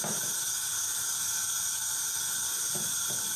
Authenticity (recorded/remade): recorded